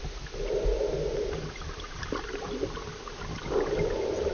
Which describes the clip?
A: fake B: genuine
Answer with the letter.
B